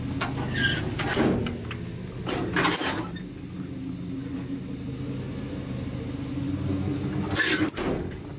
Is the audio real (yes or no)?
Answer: yes